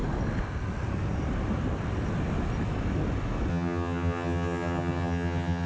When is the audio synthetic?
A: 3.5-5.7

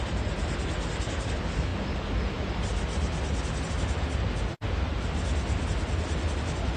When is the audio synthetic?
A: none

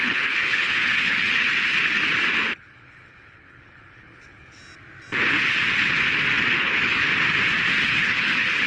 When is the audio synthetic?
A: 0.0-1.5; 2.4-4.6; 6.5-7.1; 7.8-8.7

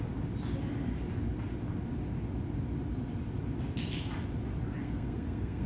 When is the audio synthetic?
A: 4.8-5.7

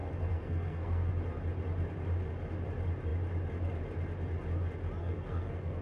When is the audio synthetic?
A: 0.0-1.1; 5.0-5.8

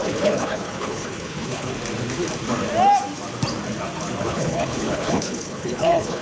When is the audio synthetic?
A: 0.0-1.7; 4.2-6.2

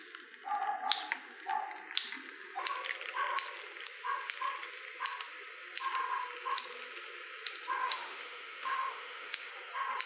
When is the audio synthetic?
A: 7.8-9.5